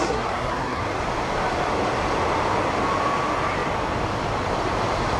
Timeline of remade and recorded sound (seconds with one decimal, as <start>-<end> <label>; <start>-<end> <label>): 0.0-0.8 remade; 0.8-5.2 recorded